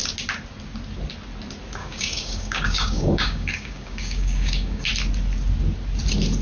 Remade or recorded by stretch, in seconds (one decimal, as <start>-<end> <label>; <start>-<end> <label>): 0.0-1.8 recorded; 1.8-4.9 remade; 4.9-6.4 recorded